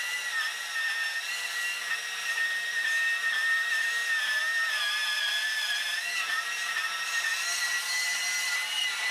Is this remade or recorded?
recorded